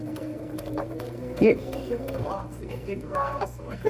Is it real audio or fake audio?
fake